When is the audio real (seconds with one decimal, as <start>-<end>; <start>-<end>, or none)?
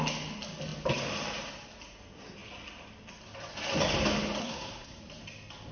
0.0-4.4; 5.0-5.7